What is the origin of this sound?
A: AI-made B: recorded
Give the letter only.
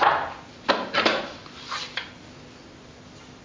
B